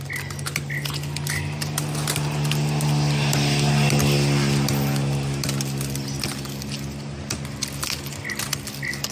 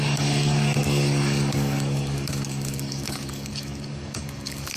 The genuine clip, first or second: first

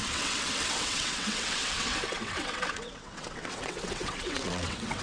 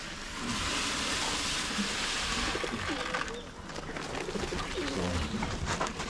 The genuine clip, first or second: second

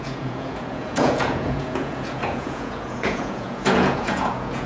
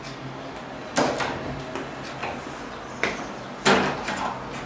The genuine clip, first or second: second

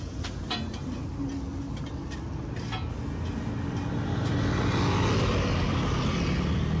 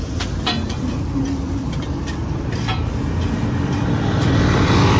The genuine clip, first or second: first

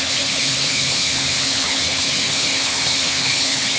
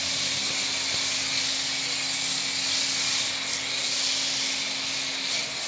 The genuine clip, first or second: second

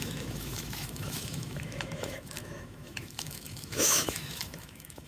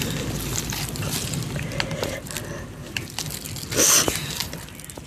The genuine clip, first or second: second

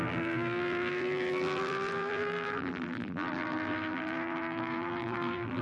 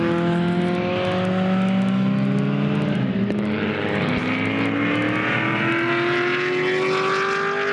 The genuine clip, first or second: second